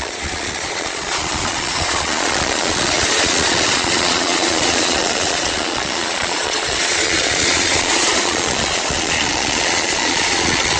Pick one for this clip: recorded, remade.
remade